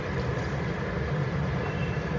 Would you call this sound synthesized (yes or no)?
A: yes